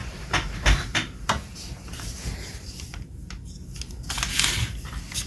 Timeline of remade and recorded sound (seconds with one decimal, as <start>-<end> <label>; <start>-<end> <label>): 0.0-3.2 remade; 3.2-5.3 recorded